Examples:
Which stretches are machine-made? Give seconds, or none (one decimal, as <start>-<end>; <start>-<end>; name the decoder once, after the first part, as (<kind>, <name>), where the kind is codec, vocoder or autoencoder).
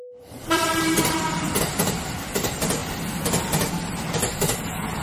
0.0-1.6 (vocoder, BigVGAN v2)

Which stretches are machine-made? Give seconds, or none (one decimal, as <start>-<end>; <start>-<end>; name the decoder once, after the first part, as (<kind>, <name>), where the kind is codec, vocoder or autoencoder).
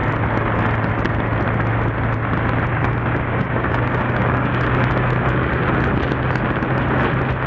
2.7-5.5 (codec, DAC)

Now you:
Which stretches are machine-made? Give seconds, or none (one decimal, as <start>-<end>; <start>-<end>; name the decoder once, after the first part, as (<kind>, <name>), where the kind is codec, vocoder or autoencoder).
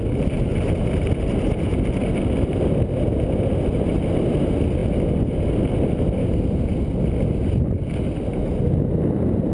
none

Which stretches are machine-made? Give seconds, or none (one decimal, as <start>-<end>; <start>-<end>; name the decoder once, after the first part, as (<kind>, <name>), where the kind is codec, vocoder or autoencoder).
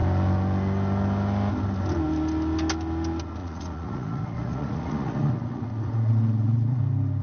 3.4-6.8 (vocoder, Vocos)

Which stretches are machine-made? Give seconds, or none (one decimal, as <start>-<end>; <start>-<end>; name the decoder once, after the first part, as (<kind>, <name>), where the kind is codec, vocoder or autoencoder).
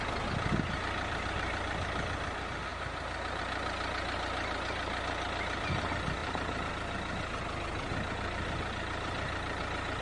2.7-3.4 (vocoder, BigVGAN v2); 6.2-6.7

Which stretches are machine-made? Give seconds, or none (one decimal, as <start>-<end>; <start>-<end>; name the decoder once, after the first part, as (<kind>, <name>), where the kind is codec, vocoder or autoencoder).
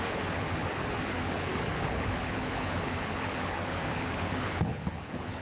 0.0-5.4 (codec, HILCodec)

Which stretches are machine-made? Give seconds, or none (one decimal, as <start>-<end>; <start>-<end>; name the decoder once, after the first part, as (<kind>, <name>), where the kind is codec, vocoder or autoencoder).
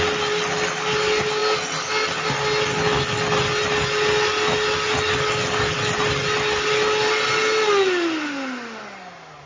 none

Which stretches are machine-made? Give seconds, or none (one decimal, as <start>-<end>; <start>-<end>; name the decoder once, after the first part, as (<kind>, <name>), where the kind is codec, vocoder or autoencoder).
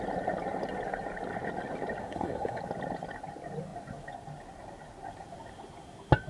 2.0-2.6 (codec, SNAC)